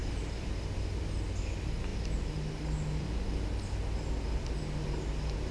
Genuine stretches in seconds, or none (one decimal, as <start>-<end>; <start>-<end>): 0.0-5.5